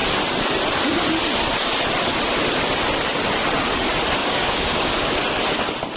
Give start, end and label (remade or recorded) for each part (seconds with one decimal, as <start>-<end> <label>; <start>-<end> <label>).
0.0-4.2 recorded; 4.2-5.2 remade; 5.2-6.0 recorded